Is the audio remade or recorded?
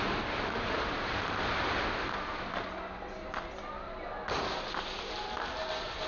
recorded